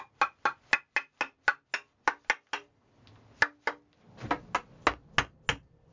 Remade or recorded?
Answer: recorded